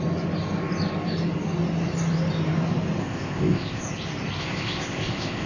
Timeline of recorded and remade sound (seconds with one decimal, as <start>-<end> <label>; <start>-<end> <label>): 0.0-3.0 recorded; 3.0-3.9 remade; 3.9-4.4 recorded; 4.4-5.5 remade

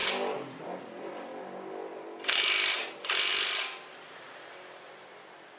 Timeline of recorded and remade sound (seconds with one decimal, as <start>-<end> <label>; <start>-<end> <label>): 0.0-5.6 recorded

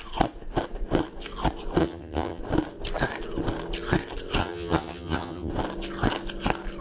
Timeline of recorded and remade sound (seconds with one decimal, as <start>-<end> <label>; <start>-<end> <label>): 0.0-1.8 recorded; 1.8-2.4 remade; 2.4-4.4 recorded; 4.4-5.5 remade; 5.5-6.8 recorded

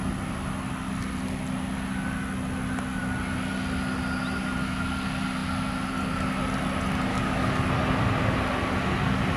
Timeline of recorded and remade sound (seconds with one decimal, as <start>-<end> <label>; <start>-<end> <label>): 0.0-7.1 recorded; 7.1-7.7 remade; 7.7-9.4 recorded